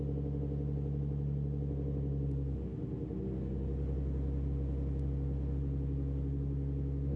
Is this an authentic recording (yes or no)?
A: yes